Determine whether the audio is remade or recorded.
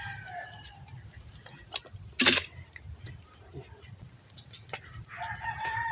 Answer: recorded